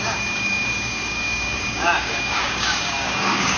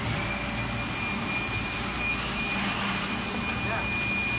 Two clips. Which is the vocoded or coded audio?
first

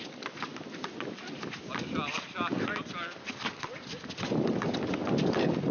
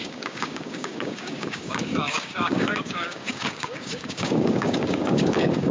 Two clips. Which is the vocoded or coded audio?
second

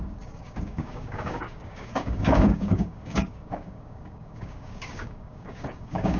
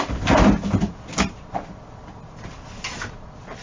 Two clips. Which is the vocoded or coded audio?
first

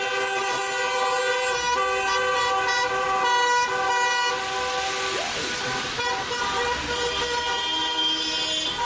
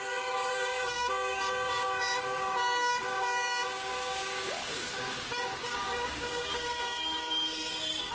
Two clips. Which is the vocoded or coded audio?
second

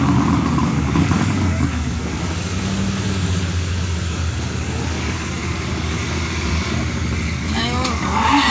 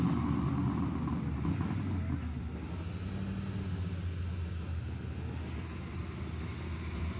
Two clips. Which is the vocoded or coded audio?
first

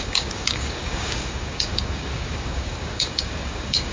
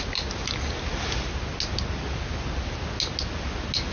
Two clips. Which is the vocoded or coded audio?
first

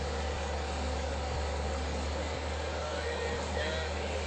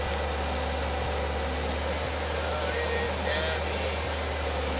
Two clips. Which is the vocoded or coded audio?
first